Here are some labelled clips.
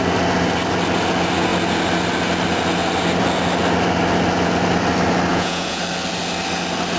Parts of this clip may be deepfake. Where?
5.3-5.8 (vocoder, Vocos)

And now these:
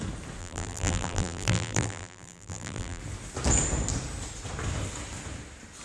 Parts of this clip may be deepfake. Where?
0.4-3.0 (vocoder, BigVGAN v2)

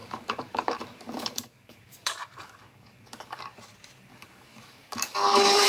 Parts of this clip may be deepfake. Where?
0.0-3.4 (codec, DAC); 4.1-5.7